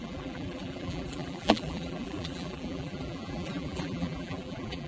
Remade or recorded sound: remade